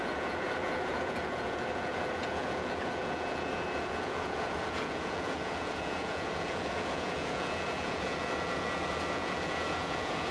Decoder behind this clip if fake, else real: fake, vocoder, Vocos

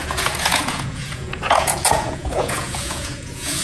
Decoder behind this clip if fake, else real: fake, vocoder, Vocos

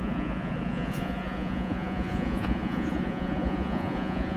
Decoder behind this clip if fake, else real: fake, vocoder, Vocos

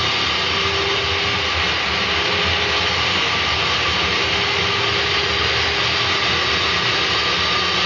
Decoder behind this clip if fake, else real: real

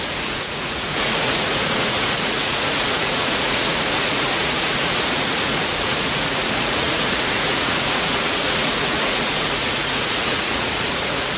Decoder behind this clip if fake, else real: fake, vocoder, Vocos